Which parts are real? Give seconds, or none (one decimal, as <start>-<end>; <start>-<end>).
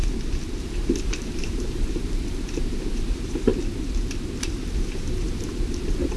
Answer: 0.0-0.6; 3.5-4.4